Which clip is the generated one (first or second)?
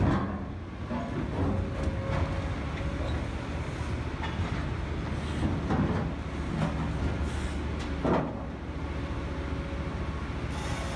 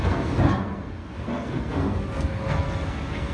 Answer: second